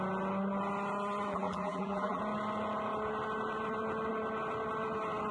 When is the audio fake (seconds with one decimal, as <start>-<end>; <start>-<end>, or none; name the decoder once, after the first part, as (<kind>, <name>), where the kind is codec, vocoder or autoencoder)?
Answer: 1.3-2.2 (vocoder, BigVGAN v2)

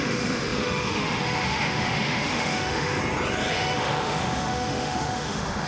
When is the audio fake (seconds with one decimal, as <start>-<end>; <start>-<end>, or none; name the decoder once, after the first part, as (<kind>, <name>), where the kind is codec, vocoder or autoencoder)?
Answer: 0.0-3.0 (autoencoder, DAC-VAE); 3.5-5.7

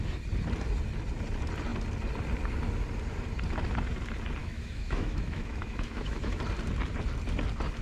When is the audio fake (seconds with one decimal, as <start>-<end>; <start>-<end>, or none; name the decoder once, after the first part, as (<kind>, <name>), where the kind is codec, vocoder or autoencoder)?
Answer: 4.4-6.4 (autoencoder, DAC-VAE)